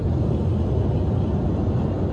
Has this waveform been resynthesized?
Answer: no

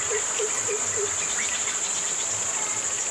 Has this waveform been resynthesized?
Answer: no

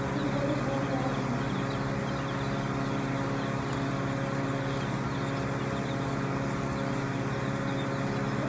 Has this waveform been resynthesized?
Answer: no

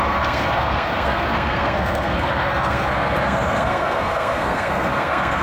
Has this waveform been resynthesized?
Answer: yes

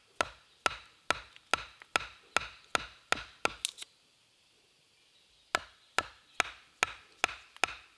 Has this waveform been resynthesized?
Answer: no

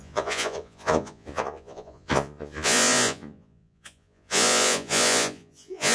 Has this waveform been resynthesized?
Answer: yes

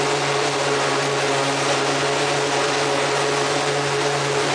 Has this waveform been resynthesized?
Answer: no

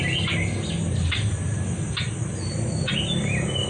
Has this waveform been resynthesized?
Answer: no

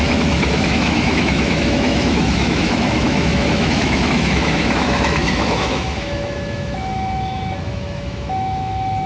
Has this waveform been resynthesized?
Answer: yes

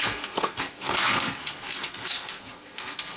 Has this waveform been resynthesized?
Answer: yes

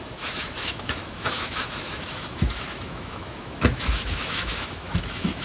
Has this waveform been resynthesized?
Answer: yes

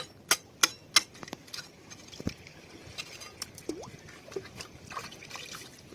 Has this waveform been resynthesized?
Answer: no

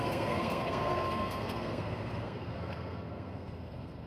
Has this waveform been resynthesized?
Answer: yes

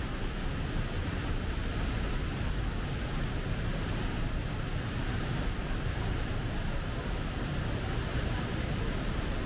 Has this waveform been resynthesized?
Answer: no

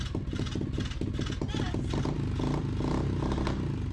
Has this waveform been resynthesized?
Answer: no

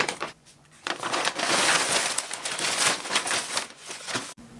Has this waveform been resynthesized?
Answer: yes